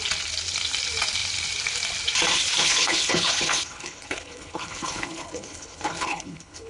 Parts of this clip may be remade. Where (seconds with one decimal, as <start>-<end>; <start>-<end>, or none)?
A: 2.6-6.7